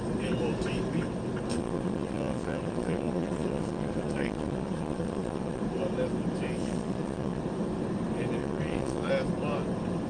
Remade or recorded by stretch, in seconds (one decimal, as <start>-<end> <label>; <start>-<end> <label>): 0.0-1.5 recorded; 1.5-5.6 remade; 5.6-6.6 recorded; 6.6-7.4 remade; 7.4-8.4 recorded; 8.4-9.1 remade; 9.1-10.1 recorded